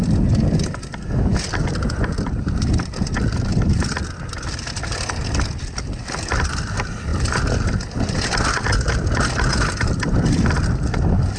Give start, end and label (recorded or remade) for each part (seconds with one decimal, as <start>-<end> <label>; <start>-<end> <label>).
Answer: 0.0-11.4 recorded